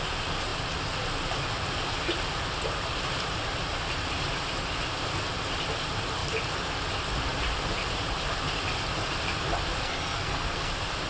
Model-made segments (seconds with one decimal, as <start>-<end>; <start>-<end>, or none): 9.8-10.7